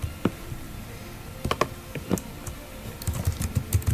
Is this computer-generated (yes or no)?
no